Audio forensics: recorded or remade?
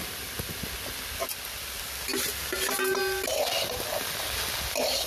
recorded